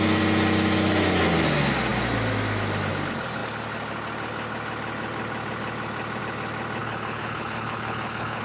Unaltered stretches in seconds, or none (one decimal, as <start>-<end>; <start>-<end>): 0.0-6.8